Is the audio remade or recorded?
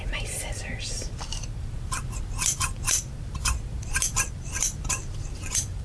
remade